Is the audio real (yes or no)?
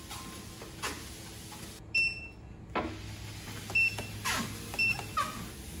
yes